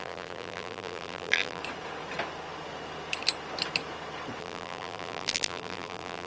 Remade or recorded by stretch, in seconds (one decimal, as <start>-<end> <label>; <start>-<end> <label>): 0.0-1.6 remade; 1.6-4.4 recorded; 4.4-6.3 remade